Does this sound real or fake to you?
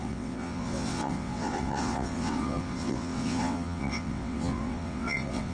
fake